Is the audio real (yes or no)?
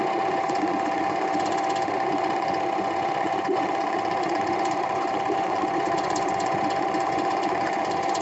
no